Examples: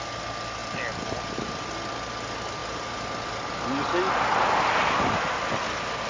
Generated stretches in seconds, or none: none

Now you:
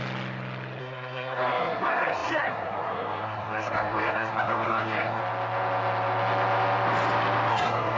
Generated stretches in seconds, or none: 0.8-5.2; 7.5-8.0

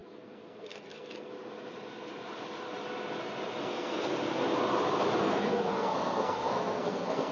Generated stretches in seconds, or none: 0.0-1.3; 3.6-4.1; 5.2-7.3

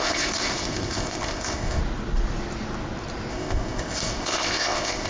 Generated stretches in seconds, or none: 0.0-1.8; 3.3-5.1

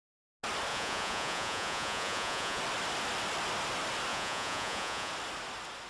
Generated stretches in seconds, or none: 0.7-2.6; 4.1-5.1

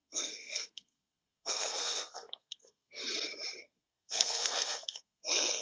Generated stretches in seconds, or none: 0.0-3.0; 3.6-5.6